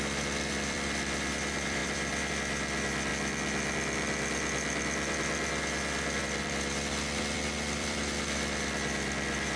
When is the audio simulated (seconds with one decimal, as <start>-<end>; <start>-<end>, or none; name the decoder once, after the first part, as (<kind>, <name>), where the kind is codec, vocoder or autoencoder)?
0.0-3.1 (vocoder, BigVGAN v2); 6.2-9.6